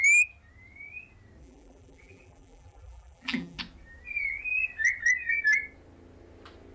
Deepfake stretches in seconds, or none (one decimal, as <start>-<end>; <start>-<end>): 1.4-3.6